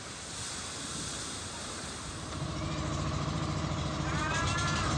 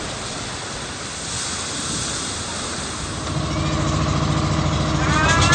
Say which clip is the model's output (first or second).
first